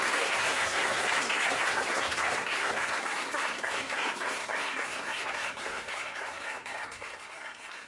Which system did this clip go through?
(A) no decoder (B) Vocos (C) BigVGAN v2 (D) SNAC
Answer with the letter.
D